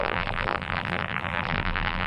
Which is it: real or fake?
fake